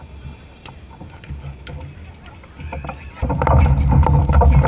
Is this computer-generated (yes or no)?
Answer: no